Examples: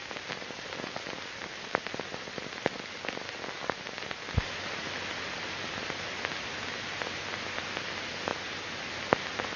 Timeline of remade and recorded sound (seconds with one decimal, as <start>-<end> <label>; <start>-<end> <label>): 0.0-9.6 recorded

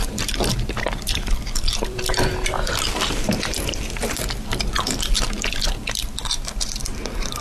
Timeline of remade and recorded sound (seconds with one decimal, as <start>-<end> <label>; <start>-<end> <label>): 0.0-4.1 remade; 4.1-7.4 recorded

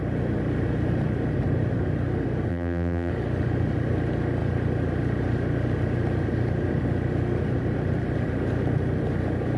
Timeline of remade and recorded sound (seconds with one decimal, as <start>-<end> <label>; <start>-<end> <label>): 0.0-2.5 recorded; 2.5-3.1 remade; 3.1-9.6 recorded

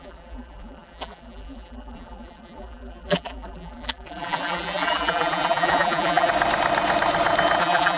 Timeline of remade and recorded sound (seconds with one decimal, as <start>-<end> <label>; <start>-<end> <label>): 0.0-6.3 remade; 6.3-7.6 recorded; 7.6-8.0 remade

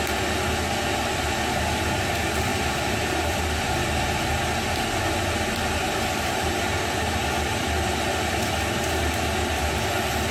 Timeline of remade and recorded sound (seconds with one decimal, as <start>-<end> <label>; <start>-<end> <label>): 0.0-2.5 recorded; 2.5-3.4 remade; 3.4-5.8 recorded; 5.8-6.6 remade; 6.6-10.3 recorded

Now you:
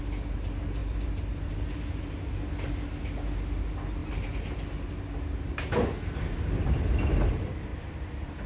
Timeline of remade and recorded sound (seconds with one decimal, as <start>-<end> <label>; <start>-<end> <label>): 0.0-0.8 recorded; 0.8-1.5 remade; 1.5-7.7 recorded; 7.7-8.5 remade

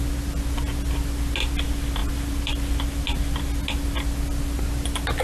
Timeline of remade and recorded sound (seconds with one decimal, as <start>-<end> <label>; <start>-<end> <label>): 0.0-2.0 recorded; 2.0-2.9 remade; 2.9-5.2 recorded

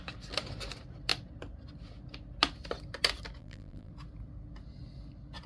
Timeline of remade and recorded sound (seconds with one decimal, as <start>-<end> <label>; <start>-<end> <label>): 0.0-3.4 recorded; 3.4-3.9 remade; 3.9-5.5 recorded